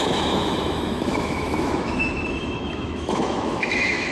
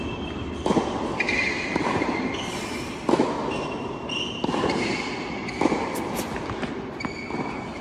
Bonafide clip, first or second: second